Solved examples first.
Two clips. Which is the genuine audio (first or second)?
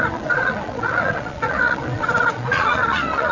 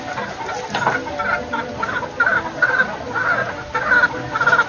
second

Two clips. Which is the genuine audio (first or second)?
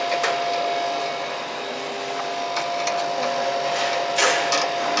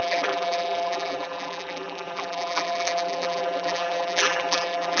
first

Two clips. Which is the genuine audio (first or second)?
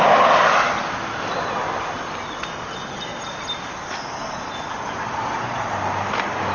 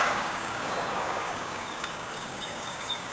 first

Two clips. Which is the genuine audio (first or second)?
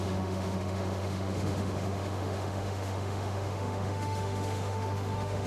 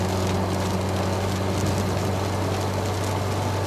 second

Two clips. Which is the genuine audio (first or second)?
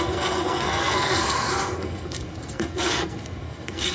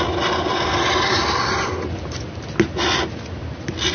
second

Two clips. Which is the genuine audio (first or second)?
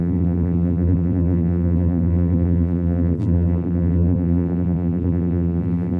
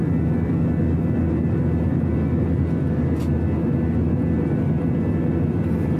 second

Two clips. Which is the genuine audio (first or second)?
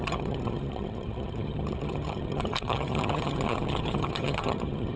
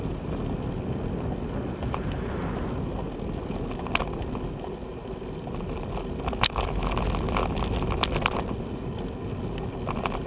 second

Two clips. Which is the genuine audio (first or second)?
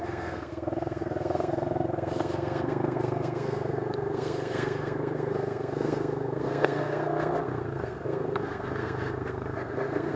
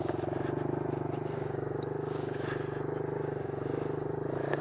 second